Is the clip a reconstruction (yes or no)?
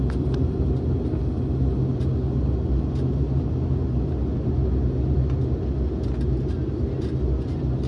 no